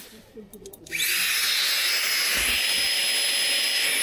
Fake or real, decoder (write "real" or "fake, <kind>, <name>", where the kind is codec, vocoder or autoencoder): real